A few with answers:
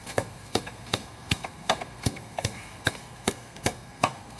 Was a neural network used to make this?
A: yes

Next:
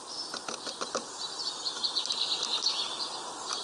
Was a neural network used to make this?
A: no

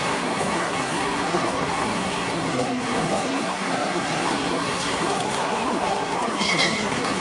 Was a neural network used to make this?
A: yes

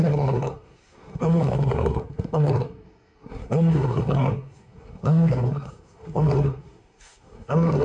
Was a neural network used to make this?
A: yes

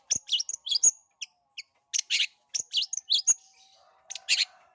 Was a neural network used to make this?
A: no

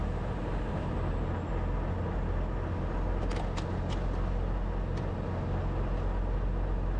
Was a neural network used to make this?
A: no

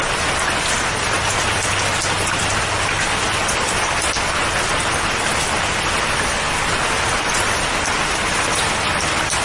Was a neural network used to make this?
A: no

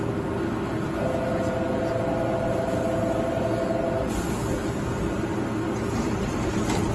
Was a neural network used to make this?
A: no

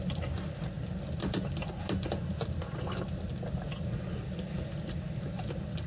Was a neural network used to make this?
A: no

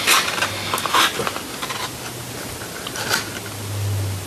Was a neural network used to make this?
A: no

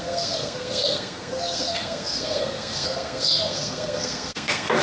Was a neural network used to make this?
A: yes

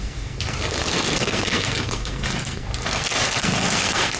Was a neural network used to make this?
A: yes